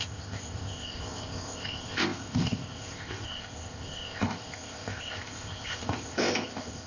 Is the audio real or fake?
fake